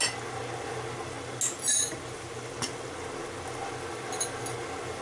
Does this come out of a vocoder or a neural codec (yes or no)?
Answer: no